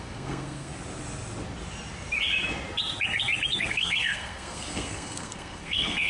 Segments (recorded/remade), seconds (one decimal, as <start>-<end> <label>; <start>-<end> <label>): 0.0-0.7 remade; 0.7-3.6 recorded; 3.6-6.1 remade